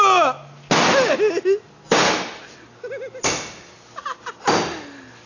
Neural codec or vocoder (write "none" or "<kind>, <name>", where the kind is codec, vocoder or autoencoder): none